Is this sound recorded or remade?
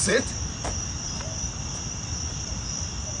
remade